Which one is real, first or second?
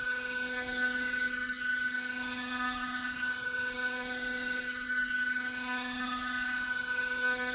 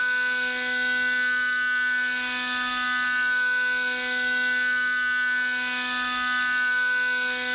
second